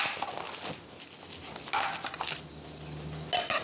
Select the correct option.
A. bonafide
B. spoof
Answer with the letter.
A